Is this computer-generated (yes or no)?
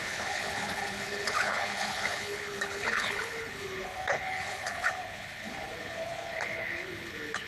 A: yes